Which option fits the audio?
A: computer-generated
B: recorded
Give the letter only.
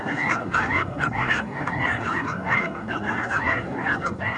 A